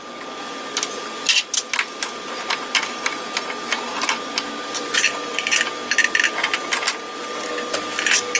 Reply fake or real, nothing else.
real